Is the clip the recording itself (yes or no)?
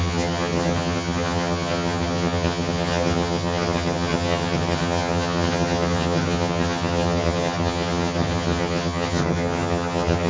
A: no